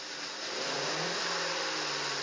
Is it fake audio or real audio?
fake